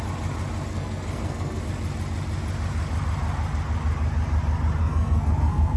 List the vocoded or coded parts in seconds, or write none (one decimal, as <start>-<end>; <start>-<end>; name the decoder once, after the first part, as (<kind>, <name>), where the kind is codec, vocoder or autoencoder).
0.7-1.6 (codec, SNAC); 4.8-5.8